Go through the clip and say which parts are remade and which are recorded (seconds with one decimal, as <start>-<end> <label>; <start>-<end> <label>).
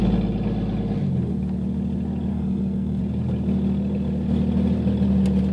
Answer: 0.0-2.3 recorded; 2.3-3.0 remade; 3.0-5.5 recorded